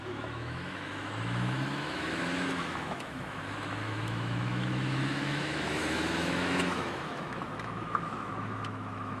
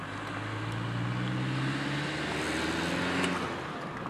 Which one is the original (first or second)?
second